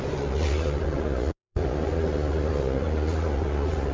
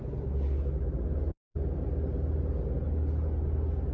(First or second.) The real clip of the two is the second